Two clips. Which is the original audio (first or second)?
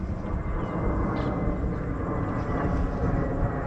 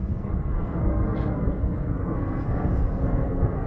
first